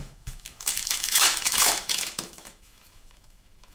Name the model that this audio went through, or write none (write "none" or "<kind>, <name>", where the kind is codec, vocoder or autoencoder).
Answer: autoencoder, DAC-VAE